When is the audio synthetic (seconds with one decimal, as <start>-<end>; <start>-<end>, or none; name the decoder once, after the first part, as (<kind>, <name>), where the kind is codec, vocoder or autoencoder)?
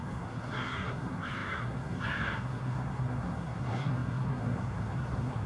0.0-5.5 (codec, SNAC)